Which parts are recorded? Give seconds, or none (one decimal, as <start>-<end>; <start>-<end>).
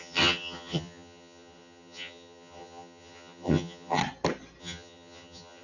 4.0-4.6